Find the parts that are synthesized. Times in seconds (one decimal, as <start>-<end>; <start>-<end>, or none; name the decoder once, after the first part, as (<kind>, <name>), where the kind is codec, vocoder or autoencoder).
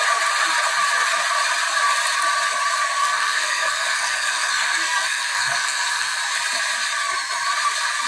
3.0-6.2 (codec, SNAC)